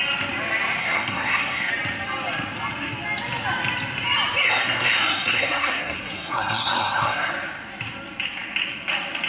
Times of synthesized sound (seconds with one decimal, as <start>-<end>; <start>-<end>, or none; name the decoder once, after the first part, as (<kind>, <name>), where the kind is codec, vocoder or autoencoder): 0.8-1.7 (codec, SNAC); 4.4-7.3

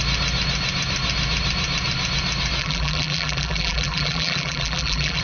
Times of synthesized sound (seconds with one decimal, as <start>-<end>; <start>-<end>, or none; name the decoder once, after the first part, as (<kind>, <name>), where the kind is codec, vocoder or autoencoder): 2.6-5.2 (vocoder, BigVGAN v2)

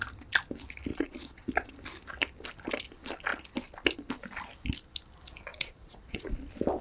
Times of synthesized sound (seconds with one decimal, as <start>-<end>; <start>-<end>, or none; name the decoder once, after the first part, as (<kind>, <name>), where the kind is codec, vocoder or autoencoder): 0.9-1.7 (vocoder, Vocos); 5.5-6.3

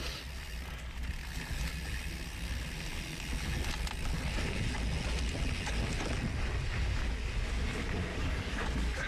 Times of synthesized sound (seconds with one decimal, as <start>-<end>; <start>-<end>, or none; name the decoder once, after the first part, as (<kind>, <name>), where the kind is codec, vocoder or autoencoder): 8.1-9.1 (codec, DAC)

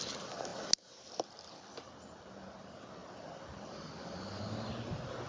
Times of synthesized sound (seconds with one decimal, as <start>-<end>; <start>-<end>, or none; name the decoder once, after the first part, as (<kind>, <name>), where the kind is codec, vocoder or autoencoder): none